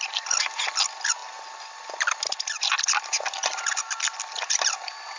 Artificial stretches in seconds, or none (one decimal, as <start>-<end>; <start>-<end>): none